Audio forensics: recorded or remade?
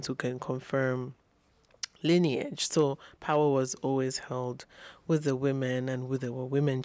recorded